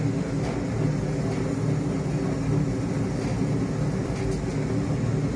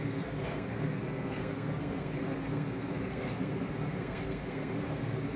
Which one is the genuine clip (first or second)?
first